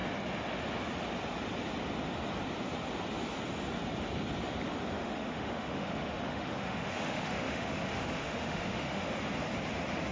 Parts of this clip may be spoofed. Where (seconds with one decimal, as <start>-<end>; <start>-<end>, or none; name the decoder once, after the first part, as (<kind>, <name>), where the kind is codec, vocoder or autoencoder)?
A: 5.0-9.2 (autoencoder, DAC-VAE)